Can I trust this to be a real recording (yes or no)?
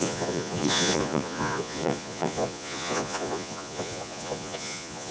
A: no